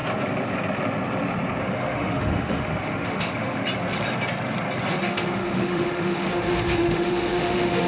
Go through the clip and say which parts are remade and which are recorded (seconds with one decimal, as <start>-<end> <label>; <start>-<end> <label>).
0.0-1.6 recorded; 1.6-3.6 remade; 3.6-4.9 recorded; 4.9-7.9 remade